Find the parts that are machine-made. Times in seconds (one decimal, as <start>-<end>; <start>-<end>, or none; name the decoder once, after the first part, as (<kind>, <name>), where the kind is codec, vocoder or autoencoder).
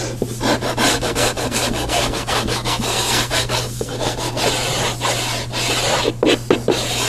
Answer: 0.9-4.4 (codec, SNAC)